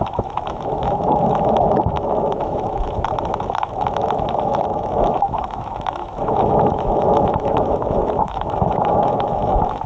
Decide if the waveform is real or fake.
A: fake